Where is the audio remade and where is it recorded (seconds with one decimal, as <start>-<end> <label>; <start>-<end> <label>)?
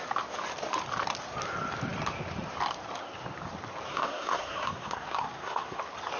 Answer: 0.0-3.9 recorded; 3.9-5.8 remade; 5.8-6.2 recorded